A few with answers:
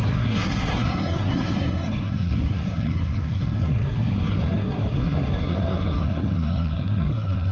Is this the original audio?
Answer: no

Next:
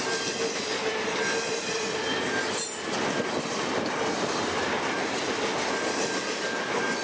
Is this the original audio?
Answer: yes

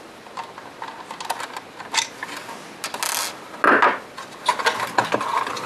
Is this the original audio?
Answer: yes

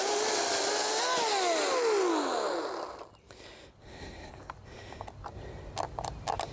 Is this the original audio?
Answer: yes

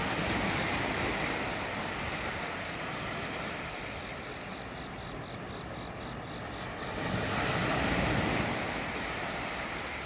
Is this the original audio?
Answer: yes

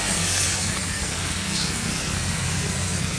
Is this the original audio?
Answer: no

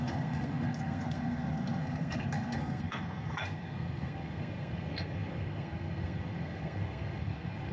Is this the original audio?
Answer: no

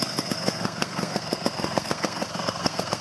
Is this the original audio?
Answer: no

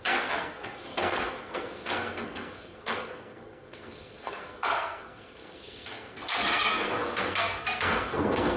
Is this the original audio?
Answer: no